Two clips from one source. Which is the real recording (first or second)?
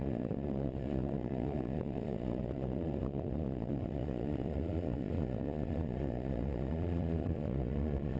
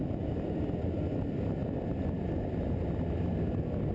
second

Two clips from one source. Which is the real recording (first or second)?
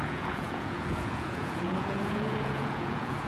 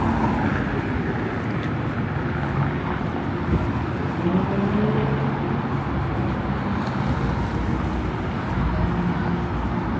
second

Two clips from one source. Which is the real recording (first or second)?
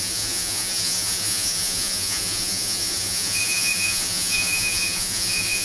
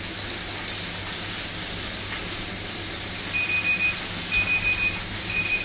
second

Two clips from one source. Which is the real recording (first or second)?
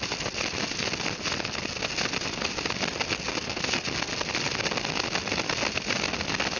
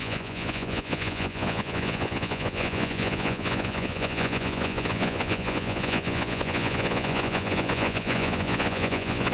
first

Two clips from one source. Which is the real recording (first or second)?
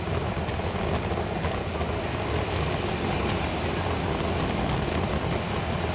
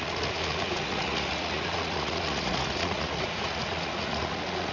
first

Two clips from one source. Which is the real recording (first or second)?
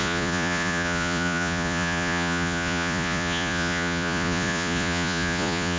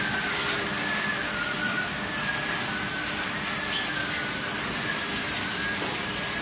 second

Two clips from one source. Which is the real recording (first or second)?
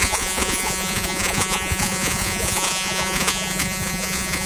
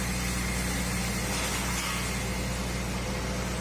second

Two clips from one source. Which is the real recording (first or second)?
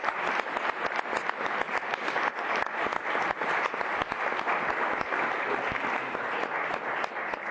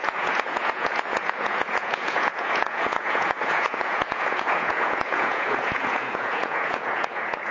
first